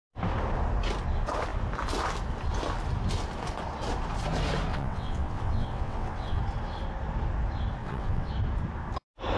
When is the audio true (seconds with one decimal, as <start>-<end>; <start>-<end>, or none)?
0.0-4.7; 6.4-7.8; 8.3-9.4

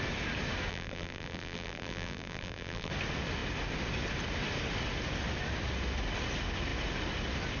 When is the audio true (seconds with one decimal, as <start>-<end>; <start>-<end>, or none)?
0.0-0.7; 2.9-7.6